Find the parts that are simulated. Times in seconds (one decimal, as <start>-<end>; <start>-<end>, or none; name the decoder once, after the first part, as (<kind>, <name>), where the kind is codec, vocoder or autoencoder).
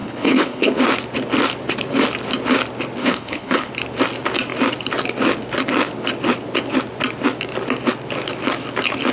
0.0-0.8 (codec, HILCodec); 3.0-3.7